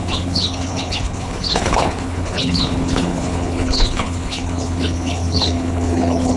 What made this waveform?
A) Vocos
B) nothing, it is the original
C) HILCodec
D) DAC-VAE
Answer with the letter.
C